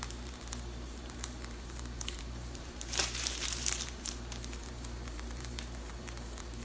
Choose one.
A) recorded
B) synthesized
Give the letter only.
B